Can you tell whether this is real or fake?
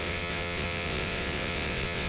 fake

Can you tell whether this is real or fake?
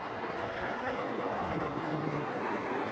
fake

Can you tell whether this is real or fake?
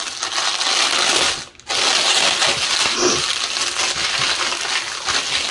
real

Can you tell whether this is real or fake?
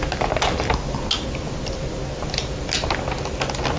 real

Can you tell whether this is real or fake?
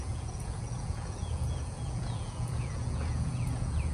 fake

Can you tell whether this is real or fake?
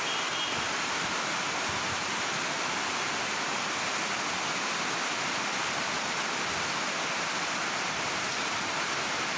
real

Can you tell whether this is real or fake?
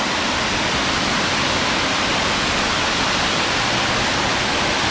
real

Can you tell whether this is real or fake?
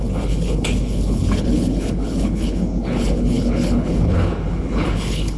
fake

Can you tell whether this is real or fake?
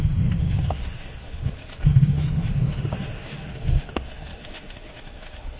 fake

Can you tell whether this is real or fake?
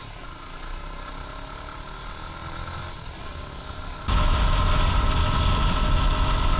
real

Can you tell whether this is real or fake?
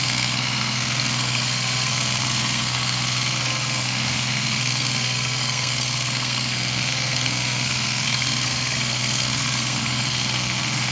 fake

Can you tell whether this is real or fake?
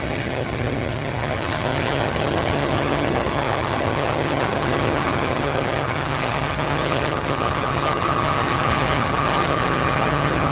fake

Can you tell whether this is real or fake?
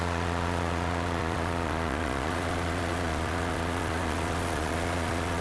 fake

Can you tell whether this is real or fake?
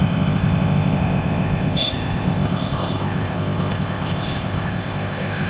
fake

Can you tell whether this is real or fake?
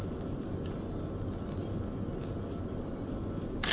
real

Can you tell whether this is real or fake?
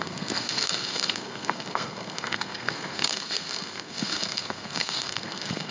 fake